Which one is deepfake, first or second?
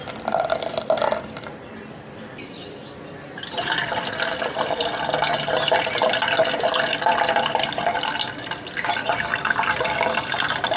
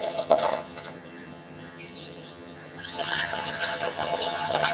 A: second